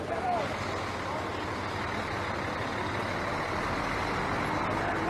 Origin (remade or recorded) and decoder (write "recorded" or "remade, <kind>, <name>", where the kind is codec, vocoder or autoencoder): recorded